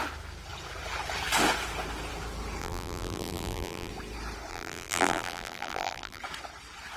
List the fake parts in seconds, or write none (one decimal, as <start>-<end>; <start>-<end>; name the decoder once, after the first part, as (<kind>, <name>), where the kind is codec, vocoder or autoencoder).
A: 2.6-3.9 (vocoder, BigVGAN v2); 4.5-6.2